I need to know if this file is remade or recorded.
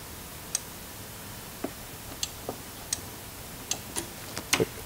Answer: recorded